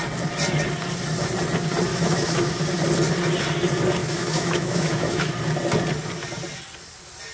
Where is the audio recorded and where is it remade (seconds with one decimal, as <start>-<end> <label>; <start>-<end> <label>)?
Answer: 0.0-1.9 recorded; 1.9-2.6 remade; 2.6-4.0 recorded; 4.0-5.3 remade; 5.3-7.3 recorded